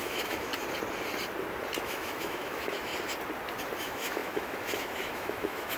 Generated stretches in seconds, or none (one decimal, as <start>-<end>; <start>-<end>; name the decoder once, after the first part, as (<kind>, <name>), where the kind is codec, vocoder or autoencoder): 0.0-0.5 (autoencoder, DAC-VAE); 1.8-2.9; 3.8-5.8